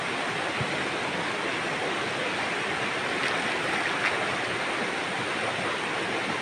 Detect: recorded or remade recorded